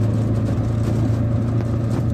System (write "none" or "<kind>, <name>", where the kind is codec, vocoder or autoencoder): none